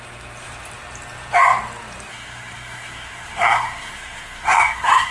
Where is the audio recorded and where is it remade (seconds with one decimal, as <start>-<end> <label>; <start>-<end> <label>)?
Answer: 0.0-2.1 recorded; 2.1-5.1 remade

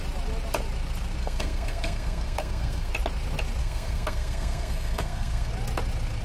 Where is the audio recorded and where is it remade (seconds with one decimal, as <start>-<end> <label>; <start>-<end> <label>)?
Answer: 0.0-1.2 recorded; 1.2-2.9 remade; 2.9-3.6 recorded; 3.6-5.5 remade; 5.5-6.2 recorded

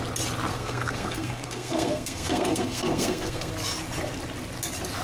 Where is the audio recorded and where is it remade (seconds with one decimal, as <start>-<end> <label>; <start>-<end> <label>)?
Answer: 0.0-0.5 recorded; 0.5-3.5 remade; 3.5-5.0 recorded

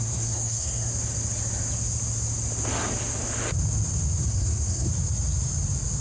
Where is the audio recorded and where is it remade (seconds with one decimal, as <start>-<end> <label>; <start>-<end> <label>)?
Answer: 0.0-0.9 remade; 0.9-4.2 recorded; 4.2-4.9 remade; 4.9-6.0 recorded

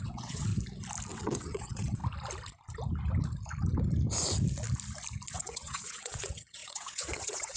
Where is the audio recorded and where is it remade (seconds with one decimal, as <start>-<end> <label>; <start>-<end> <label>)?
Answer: 0.0-0.5 remade; 0.5-1.1 recorded; 1.1-2.0 remade; 2.0-5.3 recorded; 5.3-7.6 remade

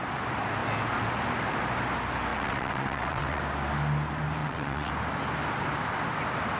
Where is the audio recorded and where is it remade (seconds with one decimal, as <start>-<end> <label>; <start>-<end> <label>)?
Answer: 0.0-2.3 recorded; 2.3-3.4 remade; 3.4-4.4 recorded; 4.4-4.9 remade; 4.9-6.6 recorded

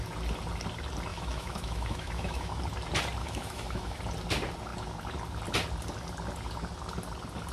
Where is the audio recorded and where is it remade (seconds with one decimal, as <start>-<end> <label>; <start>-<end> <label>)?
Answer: 0.0-1.1 recorded; 1.1-2.6 remade; 2.6-3.2 recorded; 3.2-4.0 remade; 4.0-7.5 recorded

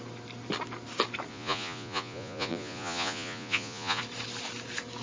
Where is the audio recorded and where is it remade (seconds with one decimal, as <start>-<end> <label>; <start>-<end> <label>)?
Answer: 0.0-1.3 recorded; 1.3-4.0 remade; 4.0-5.0 recorded